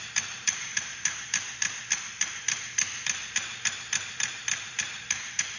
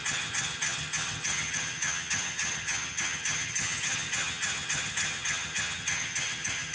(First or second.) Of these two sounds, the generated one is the second